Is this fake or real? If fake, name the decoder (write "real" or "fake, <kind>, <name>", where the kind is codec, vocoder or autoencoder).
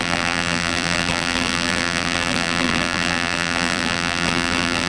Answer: fake, vocoder, BigVGAN v2